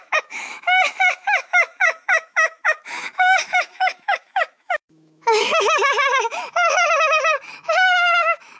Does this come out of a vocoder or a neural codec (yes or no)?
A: yes